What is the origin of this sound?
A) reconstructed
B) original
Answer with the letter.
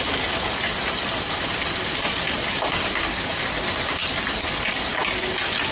B